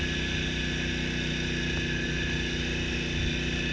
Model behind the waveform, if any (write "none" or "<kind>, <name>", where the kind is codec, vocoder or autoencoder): none